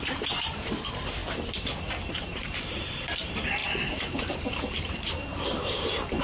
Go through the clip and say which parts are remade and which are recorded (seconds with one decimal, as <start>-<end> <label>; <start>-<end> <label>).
0.0-1.2 remade; 1.2-2.1 recorded; 2.1-6.2 remade